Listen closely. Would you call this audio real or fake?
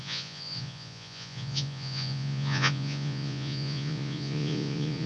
fake